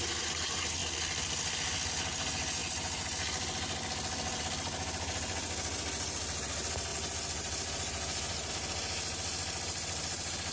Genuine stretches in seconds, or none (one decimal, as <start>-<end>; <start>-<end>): 0.0-6.9; 8.5-10.5